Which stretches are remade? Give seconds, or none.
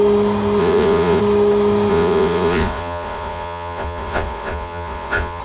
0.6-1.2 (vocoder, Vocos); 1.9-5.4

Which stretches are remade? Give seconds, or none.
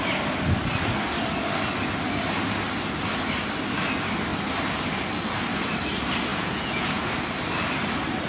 6.3-7.1 (vocoder, Vocos)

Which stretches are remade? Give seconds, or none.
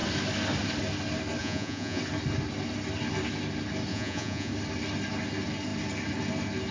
1.4-2.0 (vocoder, Vocos); 3.9-4.5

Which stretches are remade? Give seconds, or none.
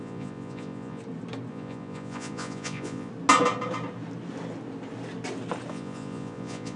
0.0-1.0 (vocoder, Vocos); 1.5-3.1; 5.7-6.8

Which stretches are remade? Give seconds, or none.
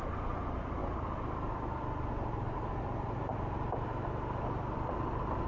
none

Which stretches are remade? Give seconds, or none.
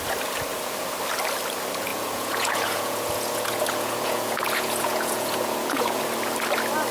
1.9-6.0 (vocoder, Vocos)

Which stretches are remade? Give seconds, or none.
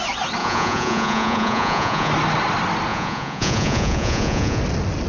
0.4-2.1 (vocoder, Vocos); 2.9-4.6